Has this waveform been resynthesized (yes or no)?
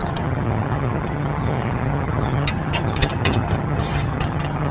yes